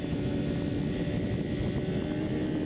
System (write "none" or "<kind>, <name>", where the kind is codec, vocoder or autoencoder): none